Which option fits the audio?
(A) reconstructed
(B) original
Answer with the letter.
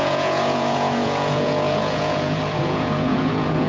A